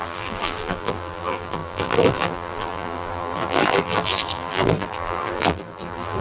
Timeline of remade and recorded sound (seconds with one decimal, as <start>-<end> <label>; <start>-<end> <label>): 0.0-6.2 remade